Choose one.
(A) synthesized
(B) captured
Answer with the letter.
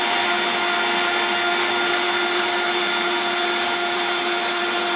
B